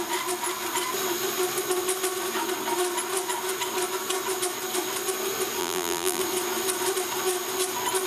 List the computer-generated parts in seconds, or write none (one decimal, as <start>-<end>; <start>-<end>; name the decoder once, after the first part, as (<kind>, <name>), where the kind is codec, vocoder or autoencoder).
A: 5.6-6.2 (vocoder, BigVGAN v2)